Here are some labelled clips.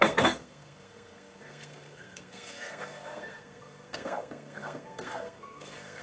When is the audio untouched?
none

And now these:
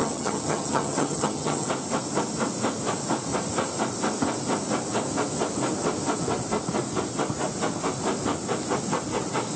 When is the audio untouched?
1.7-9.6

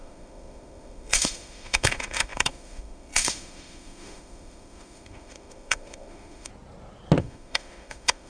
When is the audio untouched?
6.5-7.2

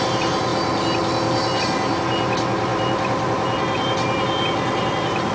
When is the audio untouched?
0.0-5.3

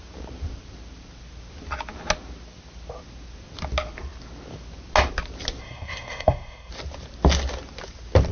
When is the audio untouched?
0.0-5.6; 6.7-8.3

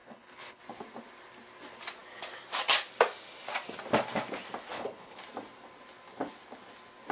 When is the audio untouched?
0.6-4.7; 5.2-7.1

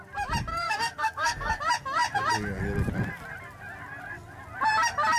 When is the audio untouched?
0.0-0.5; 1.6-5.2

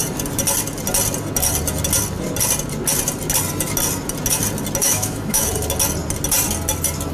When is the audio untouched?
0.0-4.8; 5.5-7.1